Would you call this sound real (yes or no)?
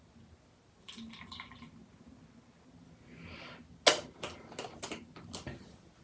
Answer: yes